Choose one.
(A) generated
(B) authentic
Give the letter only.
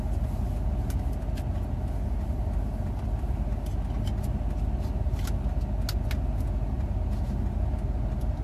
B